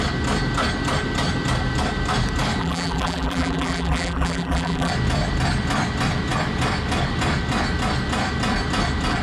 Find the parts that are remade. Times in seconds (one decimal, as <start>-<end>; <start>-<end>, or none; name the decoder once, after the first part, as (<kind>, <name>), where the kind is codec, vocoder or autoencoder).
2.6-4.9 (vocoder, BigVGAN v2)